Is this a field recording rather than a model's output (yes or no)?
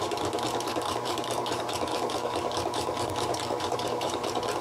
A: no